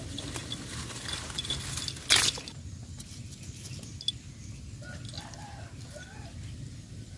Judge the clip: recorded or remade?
recorded